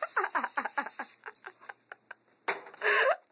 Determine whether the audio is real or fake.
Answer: real